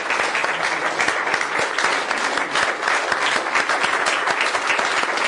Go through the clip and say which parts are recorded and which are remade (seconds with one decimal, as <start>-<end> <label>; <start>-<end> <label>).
0.0-5.3 recorded